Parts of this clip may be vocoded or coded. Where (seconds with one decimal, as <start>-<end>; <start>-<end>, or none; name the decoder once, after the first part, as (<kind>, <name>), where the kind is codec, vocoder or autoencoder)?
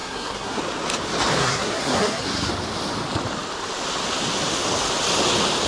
0.0-0.6 (codec, SNAC); 1.4-2.5